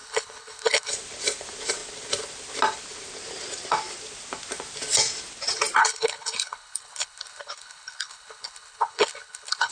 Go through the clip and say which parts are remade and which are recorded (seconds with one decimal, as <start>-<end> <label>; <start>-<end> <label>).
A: 0.0-0.9 remade; 0.9-5.8 recorded; 5.8-9.7 remade